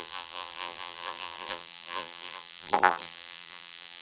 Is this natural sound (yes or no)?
no